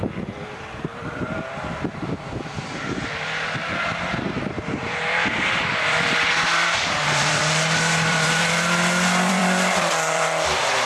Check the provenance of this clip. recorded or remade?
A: remade